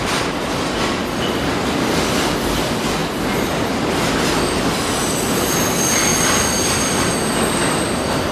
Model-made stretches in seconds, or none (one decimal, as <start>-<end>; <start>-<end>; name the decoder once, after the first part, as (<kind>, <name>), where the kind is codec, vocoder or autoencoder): none